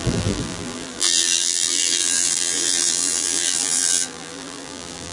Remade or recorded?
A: remade